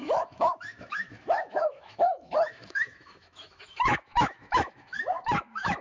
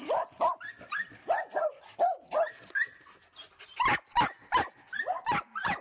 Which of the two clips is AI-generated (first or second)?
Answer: first